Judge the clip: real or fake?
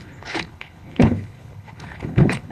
fake